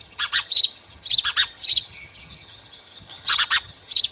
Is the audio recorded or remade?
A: remade